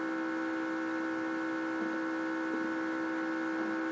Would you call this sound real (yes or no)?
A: yes